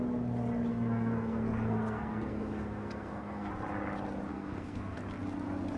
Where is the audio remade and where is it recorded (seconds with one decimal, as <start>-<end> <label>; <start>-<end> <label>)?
0.0-0.7 recorded; 0.7-3.5 remade; 3.5-4.3 recorded; 4.3-5.0 remade; 5.0-5.8 recorded